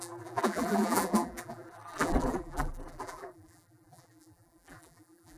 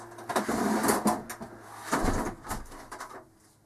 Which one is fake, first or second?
first